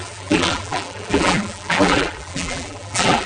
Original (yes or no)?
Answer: no